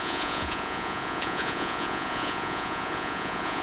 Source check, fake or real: fake